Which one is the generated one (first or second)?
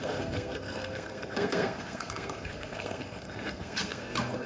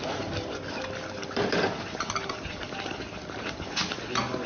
first